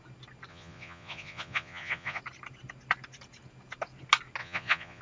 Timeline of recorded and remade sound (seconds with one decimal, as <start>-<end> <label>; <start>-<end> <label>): 0.0-0.5 recorded; 0.5-2.2 remade; 2.2-4.4 recorded; 4.4-5.0 remade